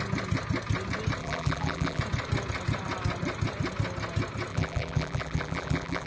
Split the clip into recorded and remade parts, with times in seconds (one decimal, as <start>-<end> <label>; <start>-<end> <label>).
0.0-1.2 recorded; 1.2-2.0 remade; 2.0-4.5 recorded; 4.5-6.1 remade

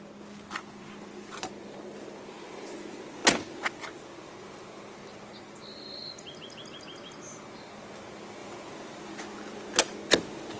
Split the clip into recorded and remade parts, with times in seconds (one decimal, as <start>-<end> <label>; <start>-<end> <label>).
0.0-10.6 recorded

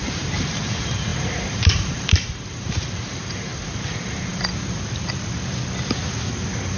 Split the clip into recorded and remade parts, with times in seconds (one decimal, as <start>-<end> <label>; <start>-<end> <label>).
0.0-4.5 remade; 4.5-6.3 recorded; 6.3-6.8 remade

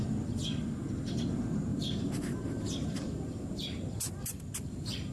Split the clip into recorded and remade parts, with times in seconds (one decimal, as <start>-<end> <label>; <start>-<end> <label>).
0.0-1.7 recorded; 1.7-5.1 remade

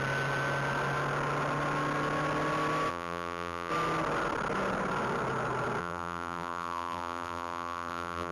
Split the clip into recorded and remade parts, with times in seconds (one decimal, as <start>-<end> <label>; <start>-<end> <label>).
0.0-2.9 recorded; 2.9-3.7 remade; 3.7-5.8 recorded; 5.8-8.3 remade